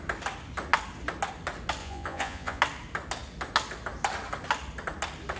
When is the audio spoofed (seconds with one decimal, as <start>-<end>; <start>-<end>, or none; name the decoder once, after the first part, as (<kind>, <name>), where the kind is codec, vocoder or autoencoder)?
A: 1.8-2.6 (vocoder, Vocos)